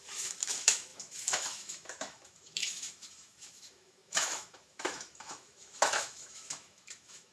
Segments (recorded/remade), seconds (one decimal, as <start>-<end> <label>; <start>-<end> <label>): 0.0-7.3 remade